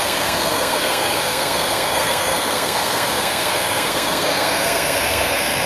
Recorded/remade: remade